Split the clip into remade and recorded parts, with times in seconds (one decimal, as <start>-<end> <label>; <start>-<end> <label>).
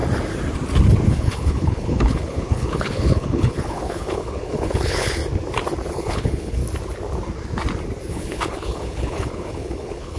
0.0-1.1 recorded; 1.1-5.2 remade; 5.2-5.9 recorded; 5.9-6.6 remade; 6.6-8.1 recorded; 8.1-10.2 remade